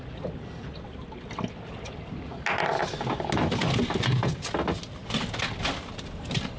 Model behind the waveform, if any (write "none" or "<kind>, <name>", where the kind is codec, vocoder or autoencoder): none